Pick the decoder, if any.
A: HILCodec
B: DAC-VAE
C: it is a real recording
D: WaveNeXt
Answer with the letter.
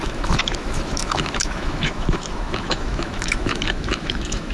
B